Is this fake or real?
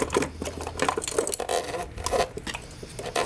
real